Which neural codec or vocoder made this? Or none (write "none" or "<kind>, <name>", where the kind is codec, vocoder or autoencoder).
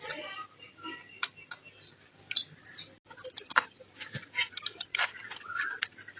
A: none